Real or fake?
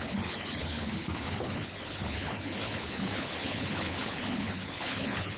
fake